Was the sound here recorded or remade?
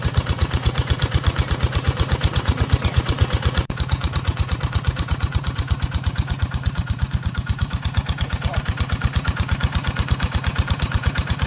remade